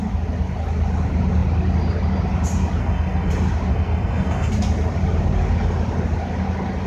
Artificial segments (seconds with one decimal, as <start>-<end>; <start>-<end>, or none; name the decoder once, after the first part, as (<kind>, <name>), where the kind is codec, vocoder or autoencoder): 2.8-3.3 (codec, SNAC); 3.7-4.5